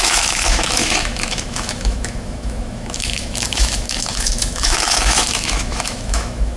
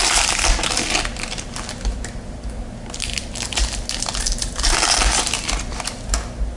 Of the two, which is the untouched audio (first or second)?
second